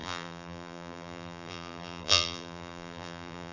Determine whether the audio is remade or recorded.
remade